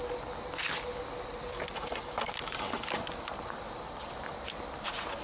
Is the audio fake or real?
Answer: real